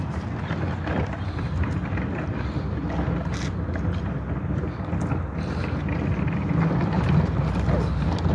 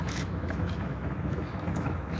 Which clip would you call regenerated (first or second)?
second